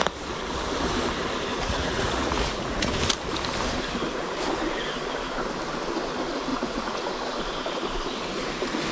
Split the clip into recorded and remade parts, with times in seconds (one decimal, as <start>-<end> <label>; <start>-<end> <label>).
0.0-1.5 recorded; 1.5-2.9 remade; 2.9-6.5 recorded; 6.5-7.1 remade; 7.1-8.9 recorded